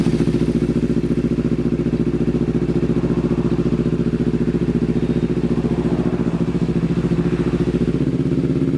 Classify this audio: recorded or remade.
recorded